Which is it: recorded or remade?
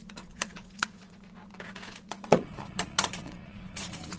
remade